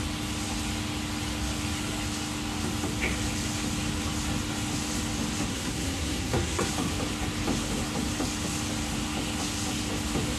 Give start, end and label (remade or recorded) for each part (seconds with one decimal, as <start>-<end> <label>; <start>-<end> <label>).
0.0-5.5 recorded; 5.5-6.7 remade; 6.7-10.4 recorded